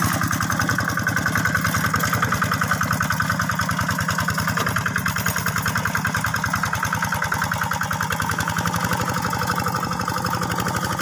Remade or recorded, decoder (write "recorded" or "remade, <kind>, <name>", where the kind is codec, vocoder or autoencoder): recorded